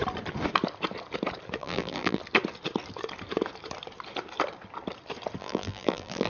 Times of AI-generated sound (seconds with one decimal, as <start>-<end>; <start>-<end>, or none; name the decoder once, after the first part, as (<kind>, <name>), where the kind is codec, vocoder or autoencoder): 1.6-2.2 (vocoder, BigVGAN v2); 5.4-6.3